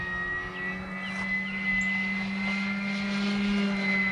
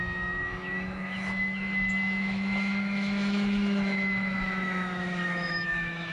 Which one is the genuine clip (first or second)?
first